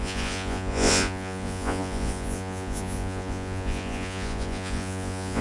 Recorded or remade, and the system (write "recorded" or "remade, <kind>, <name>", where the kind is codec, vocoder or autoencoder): remade, vocoder, Vocos